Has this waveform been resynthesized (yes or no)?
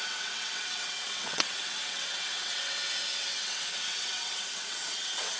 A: yes